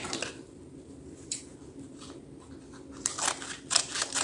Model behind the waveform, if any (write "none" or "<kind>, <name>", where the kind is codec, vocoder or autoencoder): none